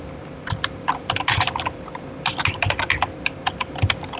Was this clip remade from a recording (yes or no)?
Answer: no